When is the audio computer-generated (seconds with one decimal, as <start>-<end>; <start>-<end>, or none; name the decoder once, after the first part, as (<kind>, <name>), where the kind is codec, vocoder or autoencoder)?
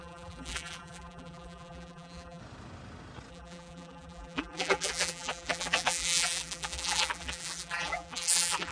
0.0-2.4 (vocoder, BigVGAN v2); 3.3-8.7